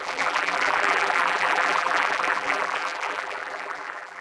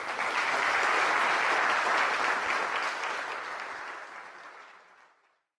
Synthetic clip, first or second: first